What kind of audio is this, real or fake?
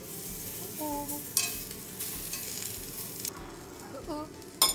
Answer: real